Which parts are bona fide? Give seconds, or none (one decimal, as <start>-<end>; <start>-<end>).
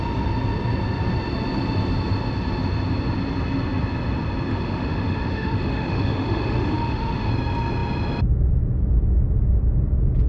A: 0.0-4.5; 7.3-10.3